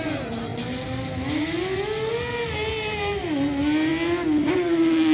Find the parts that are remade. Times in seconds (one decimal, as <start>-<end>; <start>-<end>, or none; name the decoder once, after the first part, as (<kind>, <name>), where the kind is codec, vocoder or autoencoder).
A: none